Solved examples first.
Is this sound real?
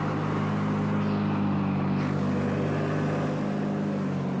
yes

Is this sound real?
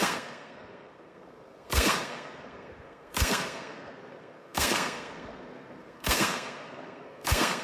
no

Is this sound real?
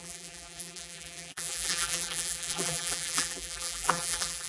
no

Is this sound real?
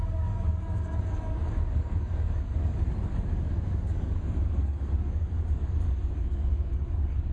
no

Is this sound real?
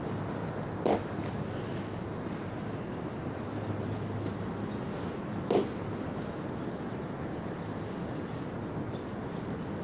yes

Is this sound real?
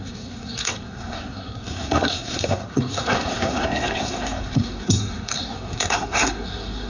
no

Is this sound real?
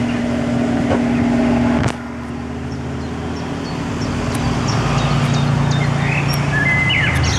yes